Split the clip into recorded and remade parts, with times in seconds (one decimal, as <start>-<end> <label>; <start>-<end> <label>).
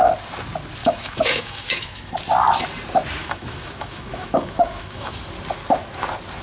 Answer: 0.0-0.8 recorded; 0.8-2.1 remade; 2.1-3.2 recorded; 3.2-5.2 remade; 5.2-6.4 recorded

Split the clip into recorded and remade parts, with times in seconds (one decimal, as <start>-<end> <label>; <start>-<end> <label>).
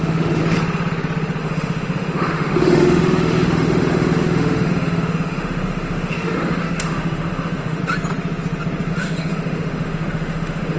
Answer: 0.0-0.4 remade; 0.4-1.4 recorded; 1.4-7.8 remade; 7.8-8.9 recorded; 8.9-10.8 remade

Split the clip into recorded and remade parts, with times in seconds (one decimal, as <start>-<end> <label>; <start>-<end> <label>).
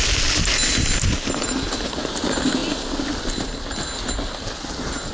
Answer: 0.0-5.1 recorded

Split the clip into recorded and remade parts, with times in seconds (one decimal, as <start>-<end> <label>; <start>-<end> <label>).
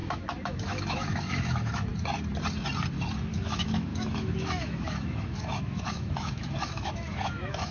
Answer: 0.0-1.9 remade; 1.9-3.3 recorded; 3.3-7.7 remade